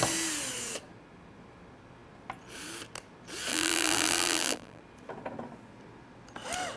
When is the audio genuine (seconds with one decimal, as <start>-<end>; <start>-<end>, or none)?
0.0-3.5; 4.8-6.8